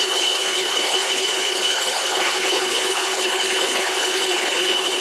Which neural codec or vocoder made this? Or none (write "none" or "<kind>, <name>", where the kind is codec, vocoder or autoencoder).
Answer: codec, HILCodec